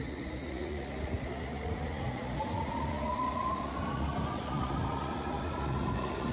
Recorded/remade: remade